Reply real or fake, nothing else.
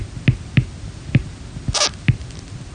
real